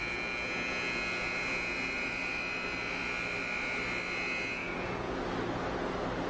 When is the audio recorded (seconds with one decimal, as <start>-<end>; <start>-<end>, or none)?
0.0-4.6; 5.1-6.3